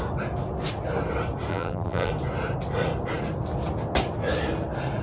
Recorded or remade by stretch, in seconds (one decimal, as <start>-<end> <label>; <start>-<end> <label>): 0.0-1.5 recorded; 1.5-2.1 remade; 2.1-5.0 recorded